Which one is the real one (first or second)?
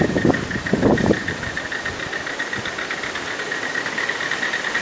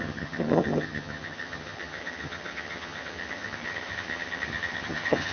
first